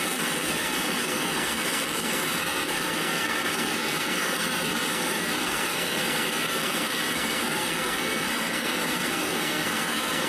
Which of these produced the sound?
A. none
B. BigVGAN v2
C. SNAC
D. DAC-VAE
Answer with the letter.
C